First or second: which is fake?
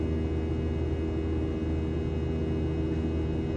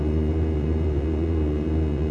second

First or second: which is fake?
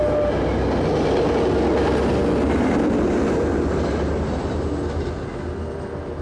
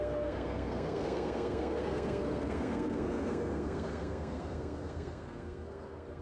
second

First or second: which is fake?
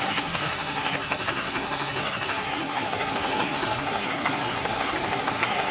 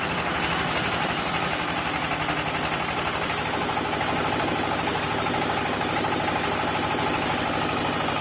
first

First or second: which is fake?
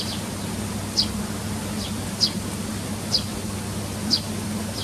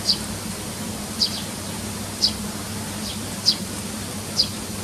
second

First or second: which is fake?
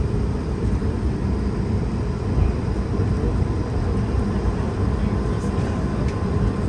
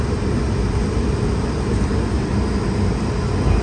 first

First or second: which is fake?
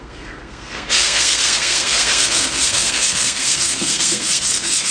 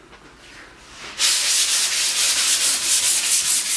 first